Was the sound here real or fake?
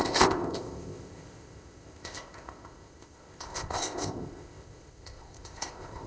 fake